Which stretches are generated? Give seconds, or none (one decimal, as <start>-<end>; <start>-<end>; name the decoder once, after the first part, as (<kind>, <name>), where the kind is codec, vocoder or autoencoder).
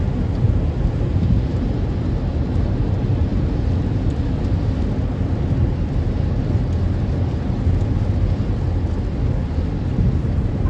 none